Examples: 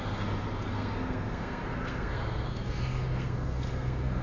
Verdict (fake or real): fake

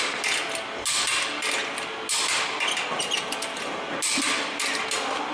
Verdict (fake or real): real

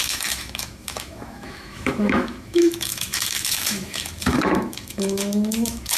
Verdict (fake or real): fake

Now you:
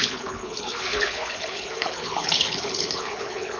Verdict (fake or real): fake